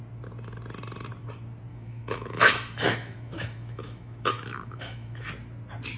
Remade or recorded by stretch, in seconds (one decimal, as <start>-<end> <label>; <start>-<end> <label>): 0.0-1.7 recorded; 1.7-5.3 remade; 5.3-6.0 recorded